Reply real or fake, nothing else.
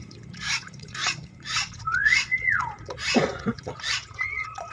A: fake